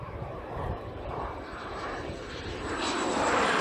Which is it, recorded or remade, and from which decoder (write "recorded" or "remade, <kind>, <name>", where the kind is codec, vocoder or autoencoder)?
remade, vocoder, BigVGAN v2